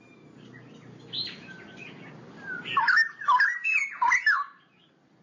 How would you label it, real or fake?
real